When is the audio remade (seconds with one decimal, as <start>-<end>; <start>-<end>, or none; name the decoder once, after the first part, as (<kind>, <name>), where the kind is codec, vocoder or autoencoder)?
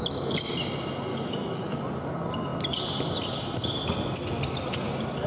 1.1-1.8 (autoencoder, DAC-VAE)